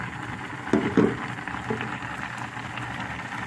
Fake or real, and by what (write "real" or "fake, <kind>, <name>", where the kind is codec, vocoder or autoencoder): real